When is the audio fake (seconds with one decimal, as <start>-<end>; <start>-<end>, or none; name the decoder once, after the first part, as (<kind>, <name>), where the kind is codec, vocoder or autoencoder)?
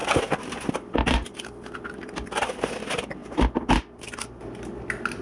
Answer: 0.0-3.2 (vocoder, BigVGAN v2); 4.7-5.2